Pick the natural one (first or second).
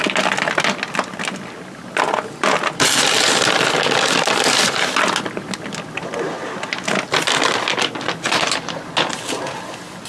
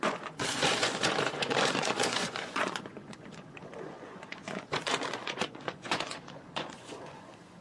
first